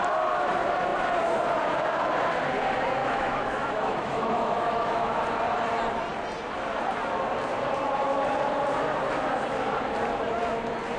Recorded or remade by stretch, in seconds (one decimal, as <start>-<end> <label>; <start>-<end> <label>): 0.0-3.0 recorded; 3.0-5.2 remade; 5.2-11.0 recorded